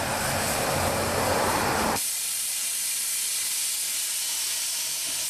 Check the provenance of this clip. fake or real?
real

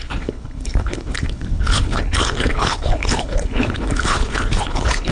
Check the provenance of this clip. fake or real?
fake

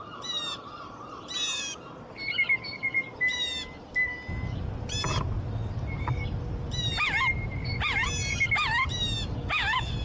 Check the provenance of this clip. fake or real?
real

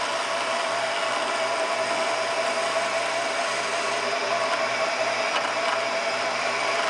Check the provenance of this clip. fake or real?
real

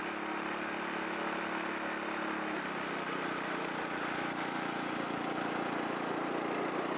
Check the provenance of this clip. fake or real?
real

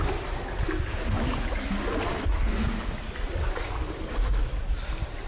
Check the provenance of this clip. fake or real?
real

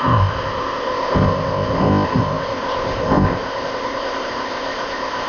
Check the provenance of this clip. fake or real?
fake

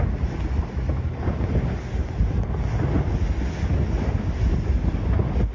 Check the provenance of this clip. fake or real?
real